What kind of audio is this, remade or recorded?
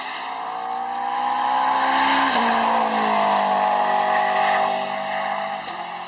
recorded